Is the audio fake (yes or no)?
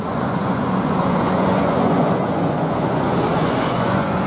yes